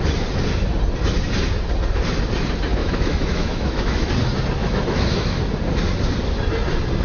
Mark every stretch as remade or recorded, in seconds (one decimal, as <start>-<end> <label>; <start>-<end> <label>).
0.0-2.8 recorded; 2.8-4.1 remade; 4.1-4.6 recorded; 4.6-5.4 remade; 5.4-7.0 recorded